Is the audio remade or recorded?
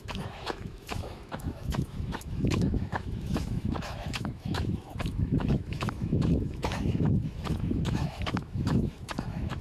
remade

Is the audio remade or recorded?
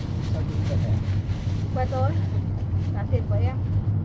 recorded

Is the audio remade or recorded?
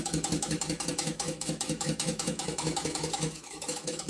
remade